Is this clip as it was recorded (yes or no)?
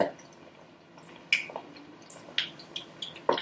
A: yes